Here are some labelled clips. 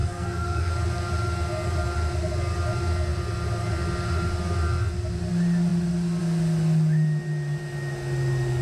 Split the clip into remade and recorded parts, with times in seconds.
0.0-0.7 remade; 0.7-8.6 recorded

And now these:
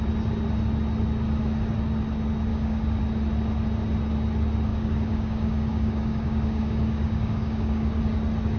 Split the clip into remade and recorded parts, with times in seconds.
0.0-2.5 recorded; 2.5-3.0 remade; 3.0-4.7 recorded; 4.7-8.0 remade; 8.0-8.6 recorded

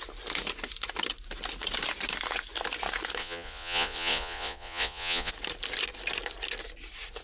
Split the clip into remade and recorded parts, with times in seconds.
0.0-3.2 recorded; 3.2-5.3 remade; 5.3-7.2 recorded

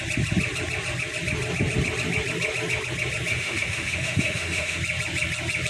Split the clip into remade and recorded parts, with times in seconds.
0.0-3.3 recorded; 3.3-4.8 remade; 4.8-5.7 recorded

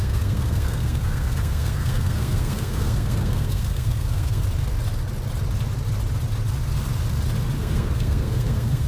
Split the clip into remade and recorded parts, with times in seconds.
0.0-4.4 remade; 4.4-7.6 recorded; 7.6-8.9 remade